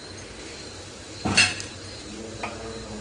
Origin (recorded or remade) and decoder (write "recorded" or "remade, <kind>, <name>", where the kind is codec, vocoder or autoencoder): recorded